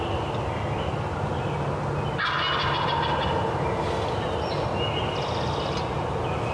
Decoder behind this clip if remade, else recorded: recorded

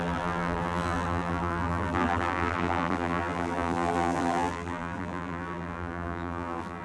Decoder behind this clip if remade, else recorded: remade, vocoder, BigVGAN v2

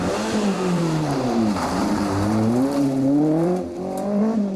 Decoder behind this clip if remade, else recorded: remade, vocoder, BigVGAN v2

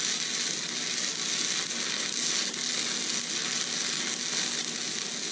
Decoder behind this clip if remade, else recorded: recorded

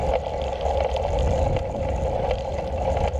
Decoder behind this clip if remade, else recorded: recorded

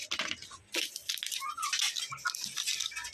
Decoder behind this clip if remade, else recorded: recorded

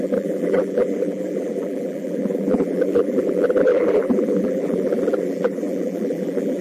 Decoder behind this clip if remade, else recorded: remade, vocoder, BigVGAN v2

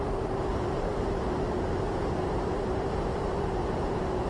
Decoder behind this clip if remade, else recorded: remade, vocoder, BigVGAN v2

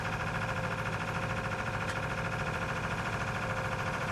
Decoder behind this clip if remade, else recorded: remade, vocoder, BigVGAN v2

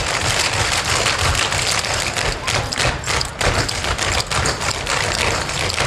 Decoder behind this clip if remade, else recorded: recorded